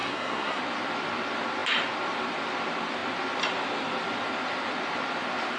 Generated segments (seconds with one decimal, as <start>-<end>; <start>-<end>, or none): 0.0-0.6